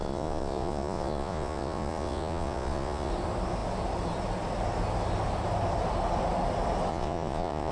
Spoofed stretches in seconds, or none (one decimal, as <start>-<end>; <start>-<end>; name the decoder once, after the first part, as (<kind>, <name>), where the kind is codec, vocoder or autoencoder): 0.0-3.1 (vocoder, Vocos); 6.9-7.7